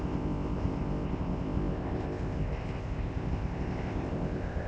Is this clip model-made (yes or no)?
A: yes